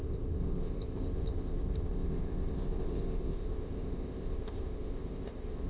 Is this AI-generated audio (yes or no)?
yes